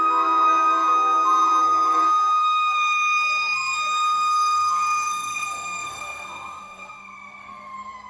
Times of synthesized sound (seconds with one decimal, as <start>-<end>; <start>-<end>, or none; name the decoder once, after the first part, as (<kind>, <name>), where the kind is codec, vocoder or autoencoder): 0.0-8.1 (codec, SNAC)